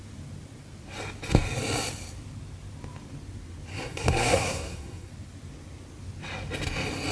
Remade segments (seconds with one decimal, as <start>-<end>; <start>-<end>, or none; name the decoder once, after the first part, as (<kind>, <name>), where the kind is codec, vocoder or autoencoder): 3.7-5.1 (codec, SNAC)